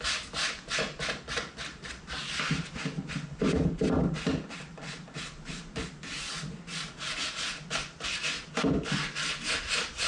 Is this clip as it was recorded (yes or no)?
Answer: yes